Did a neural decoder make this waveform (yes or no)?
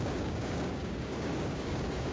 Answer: yes